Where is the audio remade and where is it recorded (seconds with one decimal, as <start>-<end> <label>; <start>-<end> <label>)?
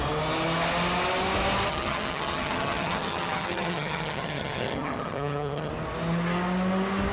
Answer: 0.0-1.7 recorded; 1.7-5.7 remade; 5.7-7.1 recorded